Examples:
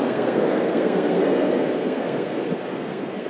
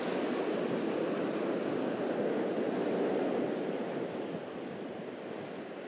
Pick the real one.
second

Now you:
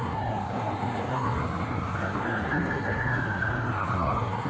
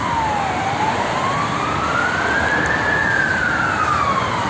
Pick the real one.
second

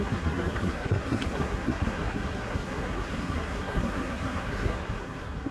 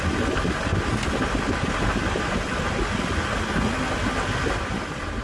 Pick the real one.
second